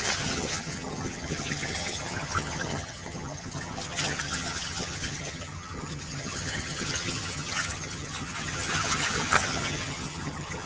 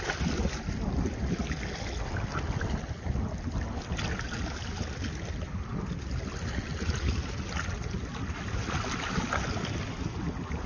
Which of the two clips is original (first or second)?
second